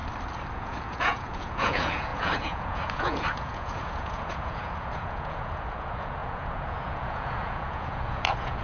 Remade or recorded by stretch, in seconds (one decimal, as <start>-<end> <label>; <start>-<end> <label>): 0.0-0.5 recorded; 0.5-8.6 remade